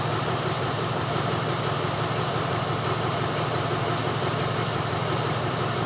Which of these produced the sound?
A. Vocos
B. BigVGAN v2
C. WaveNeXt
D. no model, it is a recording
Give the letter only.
B